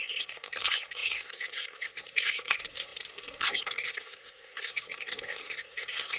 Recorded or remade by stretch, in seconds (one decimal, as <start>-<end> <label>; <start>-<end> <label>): 0.0-6.2 remade